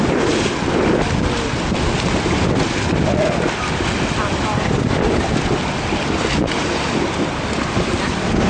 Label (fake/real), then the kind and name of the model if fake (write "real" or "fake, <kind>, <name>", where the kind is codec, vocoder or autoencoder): real